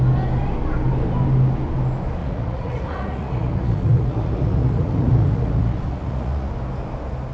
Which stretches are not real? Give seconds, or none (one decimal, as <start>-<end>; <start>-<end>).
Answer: 2.2-6.5